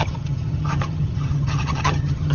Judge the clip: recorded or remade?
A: remade